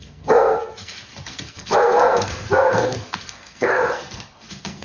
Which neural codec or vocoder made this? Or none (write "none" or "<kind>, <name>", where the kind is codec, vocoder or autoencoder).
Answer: codec, SNAC